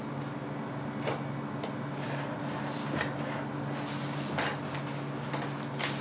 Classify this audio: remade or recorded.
recorded